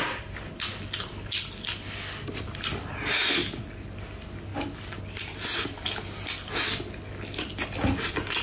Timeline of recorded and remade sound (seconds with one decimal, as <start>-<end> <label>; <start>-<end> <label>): 0.0-8.4 recorded